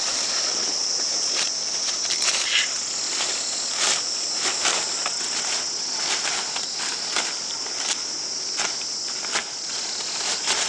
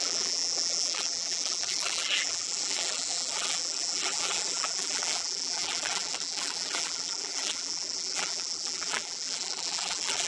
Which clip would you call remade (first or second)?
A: second